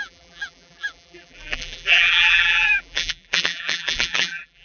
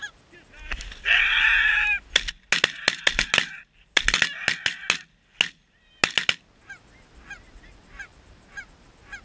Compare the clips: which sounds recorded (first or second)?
second